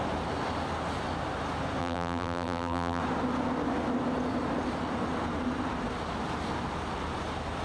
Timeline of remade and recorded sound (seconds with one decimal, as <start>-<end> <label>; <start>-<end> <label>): 0.0-1.8 recorded; 1.8-3.0 remade; 3.0-7.6 recorded

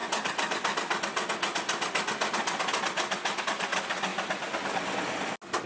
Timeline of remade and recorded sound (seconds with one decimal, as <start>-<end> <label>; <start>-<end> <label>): 0.0-5.7 recorded

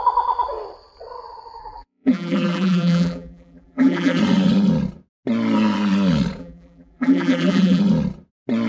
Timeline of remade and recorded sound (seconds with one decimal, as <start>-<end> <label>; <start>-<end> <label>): 0.0-1.6 recorded; 1.6-4.2 remade; 4.2-6.4 recorded; 6.4-7.8 remade; 7.8-8.7 recorded

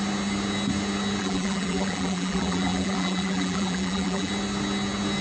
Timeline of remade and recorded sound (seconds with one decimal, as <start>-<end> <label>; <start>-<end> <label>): 0.0-1.2 recorded; 1.2-4.3 remade; 4.3-5.2 recorded